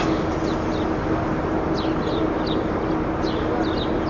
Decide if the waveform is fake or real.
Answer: real